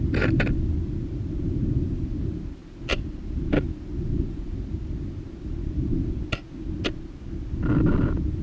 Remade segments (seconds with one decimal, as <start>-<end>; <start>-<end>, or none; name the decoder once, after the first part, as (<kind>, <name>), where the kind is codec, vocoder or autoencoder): none